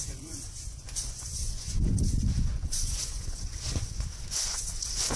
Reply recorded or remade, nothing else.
remade